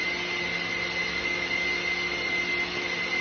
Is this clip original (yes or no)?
yes